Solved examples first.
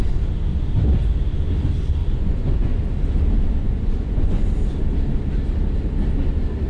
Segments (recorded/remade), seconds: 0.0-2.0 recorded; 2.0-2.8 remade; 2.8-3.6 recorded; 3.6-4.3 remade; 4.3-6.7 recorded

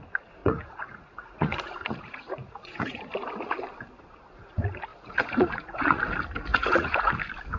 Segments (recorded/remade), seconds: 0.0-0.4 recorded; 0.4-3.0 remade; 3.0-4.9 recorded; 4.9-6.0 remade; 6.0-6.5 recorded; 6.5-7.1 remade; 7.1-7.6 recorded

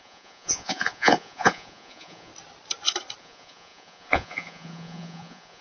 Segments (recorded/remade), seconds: 0.0-2.3 remade; 2.3-3.2 recorded; 3.2-5.6 remade

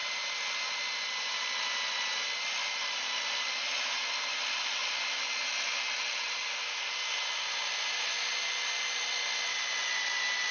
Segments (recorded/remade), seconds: 0.0-10.5 recorded

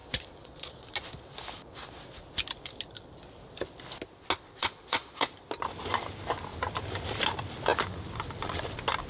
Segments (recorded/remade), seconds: 0.0-0.9 remade; 0.9-4.5 recorded; 4.5-5.3 remade; 5.3-9.1 recorded

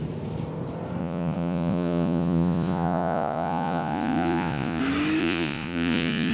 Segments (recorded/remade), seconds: 0.0-1.0 recorded; 1.0-4.8 remade; 4.8-5.2 recorded; 5.2-6.3 remade